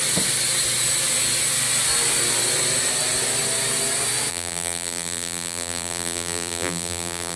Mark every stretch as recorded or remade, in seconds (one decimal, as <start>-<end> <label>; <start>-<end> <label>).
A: 0.0-4.3 recorded; 4.3-7.4 remade